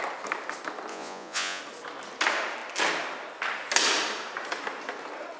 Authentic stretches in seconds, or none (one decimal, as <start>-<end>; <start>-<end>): 0.0-0.9; 1.6-5.4